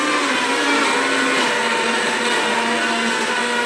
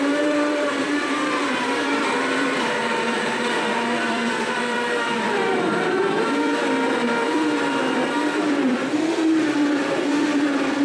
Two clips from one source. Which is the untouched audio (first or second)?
first